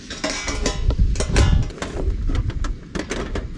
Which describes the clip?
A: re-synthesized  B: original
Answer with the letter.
B